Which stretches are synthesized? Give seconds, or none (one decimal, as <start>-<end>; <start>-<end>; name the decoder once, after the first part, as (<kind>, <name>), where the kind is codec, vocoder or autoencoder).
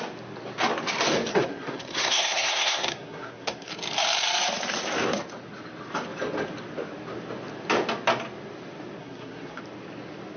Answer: 1.3-3.7 (codec, SNAC); 9.0-9.6